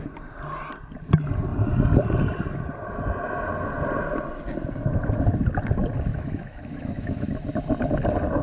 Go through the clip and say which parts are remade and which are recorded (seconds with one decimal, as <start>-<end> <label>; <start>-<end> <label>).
0.0-6.1 recorded; 6.1-7.3 remade; 7.3-8.4 recorded